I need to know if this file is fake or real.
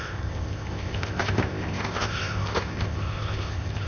fake